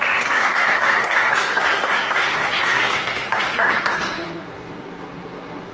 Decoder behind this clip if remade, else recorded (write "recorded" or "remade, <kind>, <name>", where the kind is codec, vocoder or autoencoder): remade, codec, SNAC